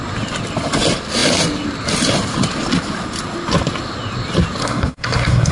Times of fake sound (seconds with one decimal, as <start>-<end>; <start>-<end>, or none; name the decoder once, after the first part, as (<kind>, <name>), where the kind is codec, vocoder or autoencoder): 4.6-5.5 (codec, SNAC)